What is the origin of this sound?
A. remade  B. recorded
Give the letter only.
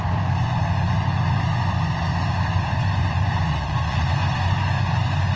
A